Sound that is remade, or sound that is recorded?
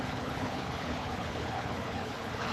remade